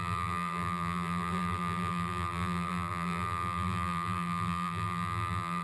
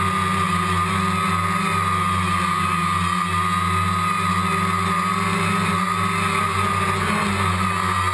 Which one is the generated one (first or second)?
first